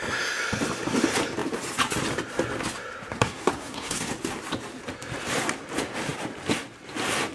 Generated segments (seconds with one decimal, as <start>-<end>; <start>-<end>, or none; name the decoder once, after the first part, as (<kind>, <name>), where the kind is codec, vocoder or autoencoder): 3.1-4.1 (codec, SNAC)